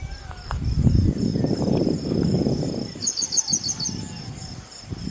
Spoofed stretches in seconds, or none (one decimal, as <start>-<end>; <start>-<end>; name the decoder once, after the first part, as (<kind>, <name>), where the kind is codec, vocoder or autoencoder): none